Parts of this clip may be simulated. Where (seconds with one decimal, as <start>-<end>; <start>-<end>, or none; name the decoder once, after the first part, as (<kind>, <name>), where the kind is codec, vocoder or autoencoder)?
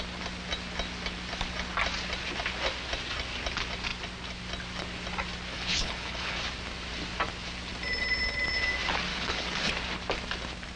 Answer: 5.5-6.4 (codec, HILCodec); 9.1-9.7